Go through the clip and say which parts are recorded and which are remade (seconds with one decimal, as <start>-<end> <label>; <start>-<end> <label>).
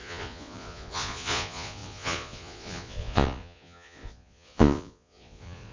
0.0-5.7 remade